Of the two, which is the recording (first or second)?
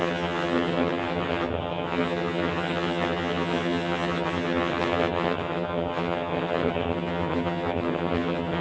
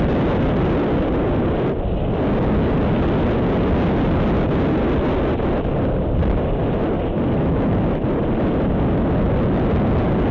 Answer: second